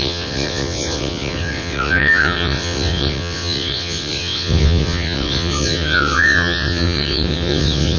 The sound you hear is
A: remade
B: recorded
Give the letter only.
A